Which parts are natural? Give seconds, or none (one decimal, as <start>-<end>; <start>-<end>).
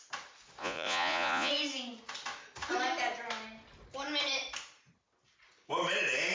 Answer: 0.0-0.6; 1.5-6.3